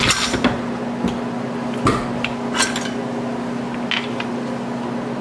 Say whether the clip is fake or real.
real